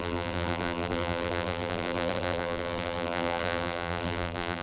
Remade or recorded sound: remade